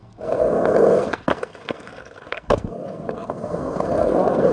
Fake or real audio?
fake